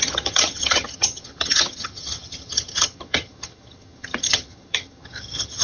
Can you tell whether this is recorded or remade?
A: remade